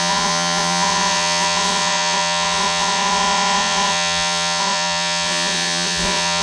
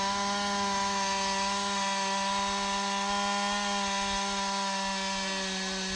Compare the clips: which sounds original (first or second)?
second